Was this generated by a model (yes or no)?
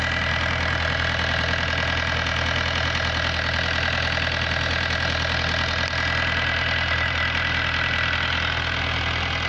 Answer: no